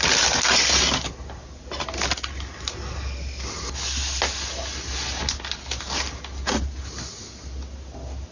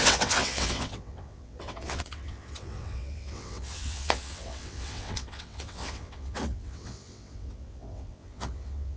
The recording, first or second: first